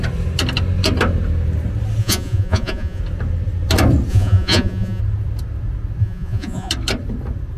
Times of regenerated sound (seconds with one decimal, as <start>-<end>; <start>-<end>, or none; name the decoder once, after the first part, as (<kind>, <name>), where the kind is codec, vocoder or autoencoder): 2.0-3.0 (vocoder, Vocos); 4.1-5.0; 6.0-6.7